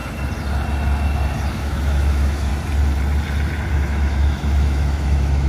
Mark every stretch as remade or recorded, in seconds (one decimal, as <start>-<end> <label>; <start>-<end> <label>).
0.0-1.5 recorded; 1.5-2.5 remade; 2.5-3.7 recorded; 3.7-5.5 remade